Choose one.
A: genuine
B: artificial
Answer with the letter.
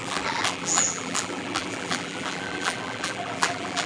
B